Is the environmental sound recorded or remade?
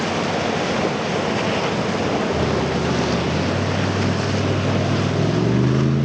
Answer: recorded